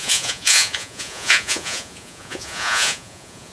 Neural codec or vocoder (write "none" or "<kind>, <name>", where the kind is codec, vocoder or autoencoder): vocoder, Vocos